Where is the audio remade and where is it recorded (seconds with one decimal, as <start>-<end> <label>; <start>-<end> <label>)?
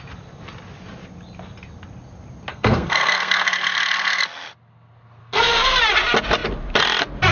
0.0-2.5 recorded; 2.5-4.2 remade; 4.2-5.2 recorded; 5.2-5.8 remade; 5.8-7.3 recorded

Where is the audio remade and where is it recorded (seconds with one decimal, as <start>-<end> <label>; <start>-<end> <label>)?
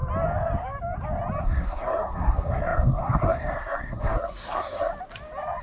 0.0-1.4 recorded; 1.4-4.9 remade; 4.9-5.6 recorded